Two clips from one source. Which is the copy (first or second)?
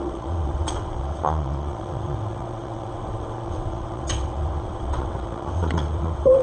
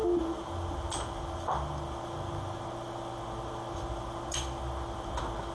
first